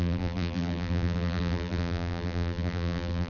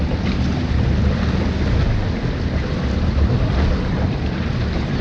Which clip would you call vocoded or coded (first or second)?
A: first